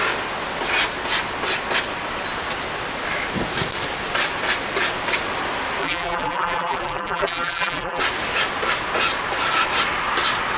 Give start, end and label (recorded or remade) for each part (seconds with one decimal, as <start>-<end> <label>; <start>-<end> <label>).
0.0-5.8 recorded; 5.8-8.0 remade; 8.0-10.6 recorded